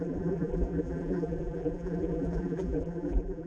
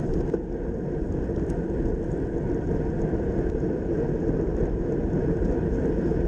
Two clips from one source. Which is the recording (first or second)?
second